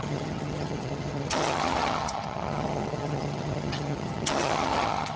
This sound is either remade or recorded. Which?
remade